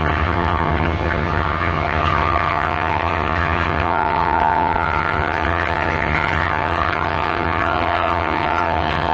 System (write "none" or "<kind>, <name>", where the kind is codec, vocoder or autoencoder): vocoder, HiFi-GAN